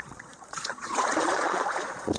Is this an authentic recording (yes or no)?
no